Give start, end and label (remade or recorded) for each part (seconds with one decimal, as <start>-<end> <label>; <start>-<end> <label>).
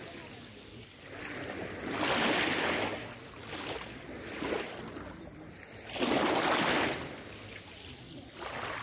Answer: 0.0-8.8 recorded